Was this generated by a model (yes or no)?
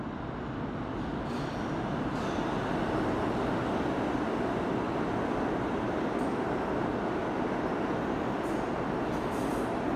no